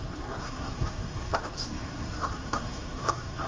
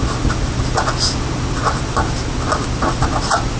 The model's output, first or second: first